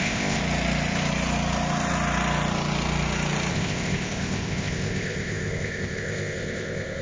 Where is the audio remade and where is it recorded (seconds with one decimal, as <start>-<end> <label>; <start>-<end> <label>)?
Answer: 0.0-0.4 remade; 0.4-3.5 recorded; 3.5-7.0 remade